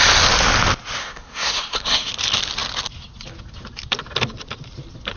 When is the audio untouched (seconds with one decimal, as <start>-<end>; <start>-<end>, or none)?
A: 0.0-1.0; 2.1-5.2

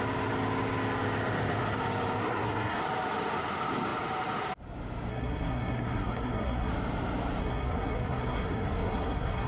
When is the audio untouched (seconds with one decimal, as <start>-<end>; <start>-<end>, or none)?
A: 0.0-2.2; 2.8-5.1; 6.7-7.4

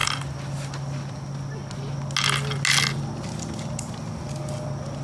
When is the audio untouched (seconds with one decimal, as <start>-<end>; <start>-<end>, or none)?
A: 0.0-5.0

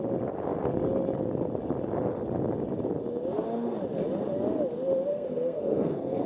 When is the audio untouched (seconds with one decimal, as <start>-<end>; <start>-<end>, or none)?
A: 0.0-5.1